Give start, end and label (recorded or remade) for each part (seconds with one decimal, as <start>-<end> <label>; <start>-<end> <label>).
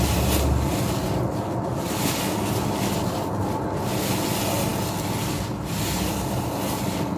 0.0-7.2 recorded